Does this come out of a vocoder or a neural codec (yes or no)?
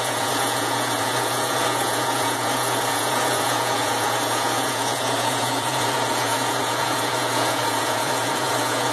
yes